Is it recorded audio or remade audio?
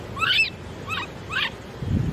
recorded